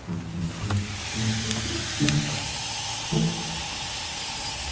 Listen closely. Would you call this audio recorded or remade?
recorded